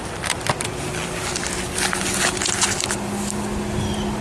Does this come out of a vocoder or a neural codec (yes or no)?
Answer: no